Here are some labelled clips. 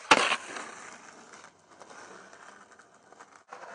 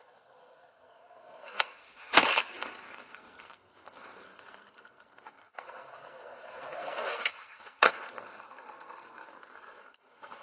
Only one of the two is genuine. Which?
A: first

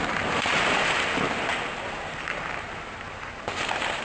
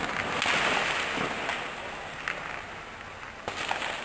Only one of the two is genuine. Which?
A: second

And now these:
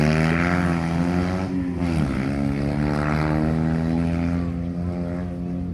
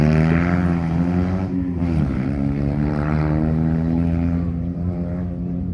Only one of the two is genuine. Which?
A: first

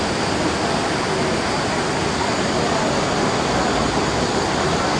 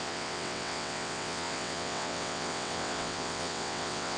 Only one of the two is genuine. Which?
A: first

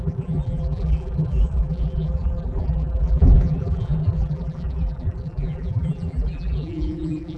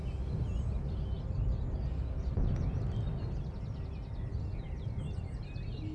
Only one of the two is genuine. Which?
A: second